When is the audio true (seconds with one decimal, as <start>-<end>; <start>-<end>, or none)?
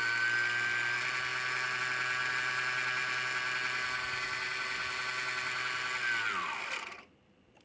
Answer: 0.0-7.6